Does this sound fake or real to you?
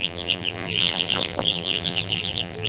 fake